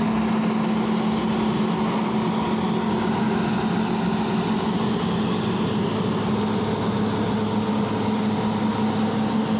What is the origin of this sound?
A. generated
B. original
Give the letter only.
B